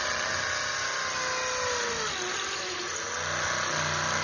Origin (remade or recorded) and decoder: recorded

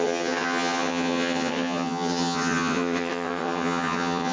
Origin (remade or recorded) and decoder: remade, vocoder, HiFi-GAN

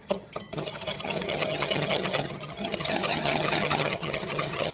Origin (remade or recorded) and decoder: remade, vocoder, HiFi-GAN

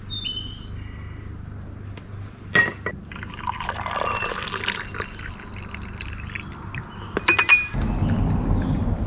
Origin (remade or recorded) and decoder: recorded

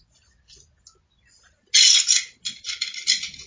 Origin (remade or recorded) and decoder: recorded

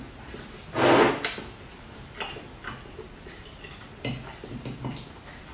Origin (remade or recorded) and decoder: recorded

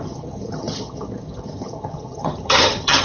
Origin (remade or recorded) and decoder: remade, vocoder, HiFi-GAN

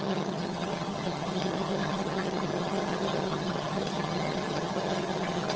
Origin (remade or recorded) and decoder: remade, vocoder, HiFi-GAN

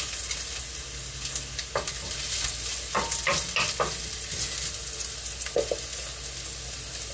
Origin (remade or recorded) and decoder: recorded